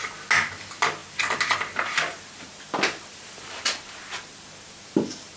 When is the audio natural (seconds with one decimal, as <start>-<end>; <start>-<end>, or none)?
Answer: 0.0-5.4